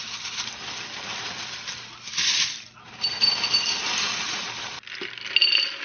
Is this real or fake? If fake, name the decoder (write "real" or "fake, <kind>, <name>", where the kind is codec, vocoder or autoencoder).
real